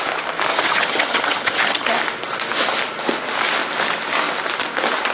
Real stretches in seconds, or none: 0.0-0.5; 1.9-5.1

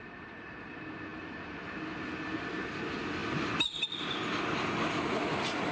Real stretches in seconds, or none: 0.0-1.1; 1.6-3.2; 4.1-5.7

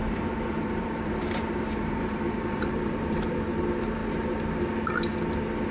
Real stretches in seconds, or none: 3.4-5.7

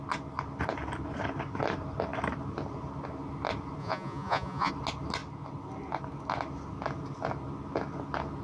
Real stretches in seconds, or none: 0.0-3.8; 4.7-8.4

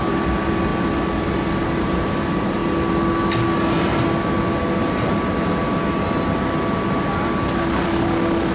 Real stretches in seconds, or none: 0.0-7.6

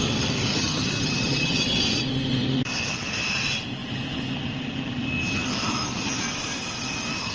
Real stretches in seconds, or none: 0.0-0.5; 1.8-7.3